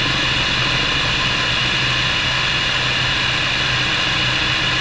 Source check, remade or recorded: recorded